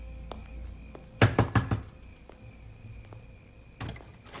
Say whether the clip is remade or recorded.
recorded